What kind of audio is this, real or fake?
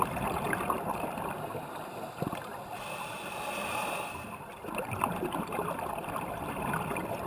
fake